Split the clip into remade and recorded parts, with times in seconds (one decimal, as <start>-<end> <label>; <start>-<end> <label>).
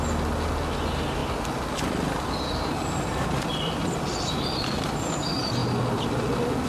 0.0-6.7 recorded